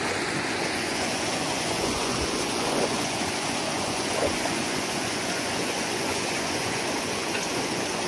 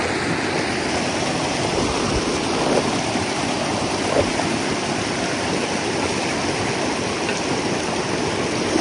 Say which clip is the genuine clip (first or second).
second